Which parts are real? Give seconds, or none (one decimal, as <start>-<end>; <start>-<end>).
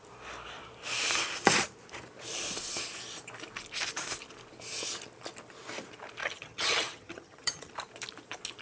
0.0-6.2; 7.7-8.6